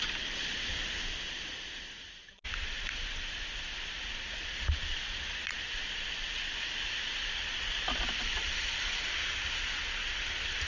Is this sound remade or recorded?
recorded